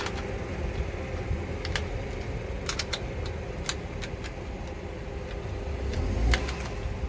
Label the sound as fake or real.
real